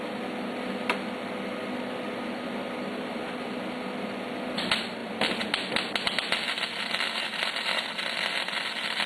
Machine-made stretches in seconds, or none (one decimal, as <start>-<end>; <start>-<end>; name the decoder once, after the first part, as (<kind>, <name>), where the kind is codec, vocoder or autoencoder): none